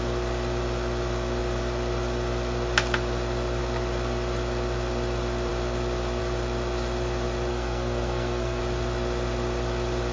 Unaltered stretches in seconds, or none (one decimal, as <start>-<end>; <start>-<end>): 0.0-7.5; 8.6-10.1